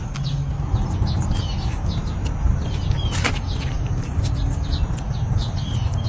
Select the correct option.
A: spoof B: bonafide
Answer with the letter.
B